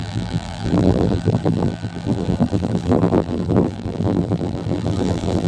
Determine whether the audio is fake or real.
fake